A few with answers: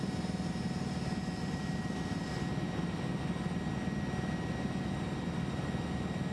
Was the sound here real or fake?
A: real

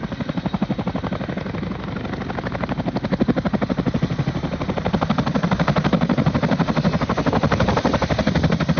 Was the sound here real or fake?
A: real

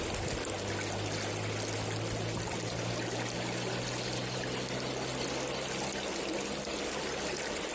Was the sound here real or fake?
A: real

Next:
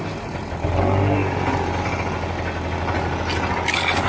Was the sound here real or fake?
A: real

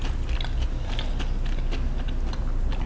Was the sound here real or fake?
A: real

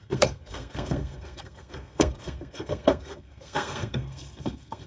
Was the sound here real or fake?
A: fake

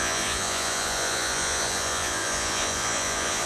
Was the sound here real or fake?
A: fake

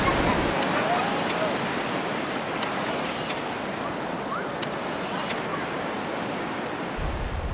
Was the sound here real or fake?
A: real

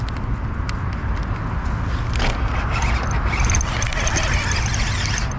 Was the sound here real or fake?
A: real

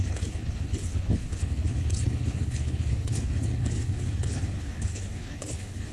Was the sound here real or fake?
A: fake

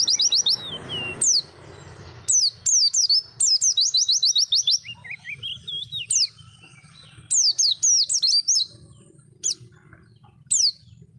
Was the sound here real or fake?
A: real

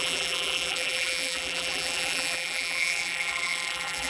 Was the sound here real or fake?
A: fake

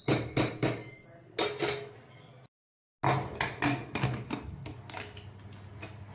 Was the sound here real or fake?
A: real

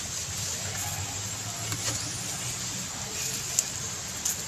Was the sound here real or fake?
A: real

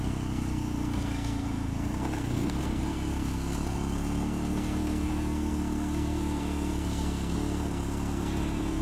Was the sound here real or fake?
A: fake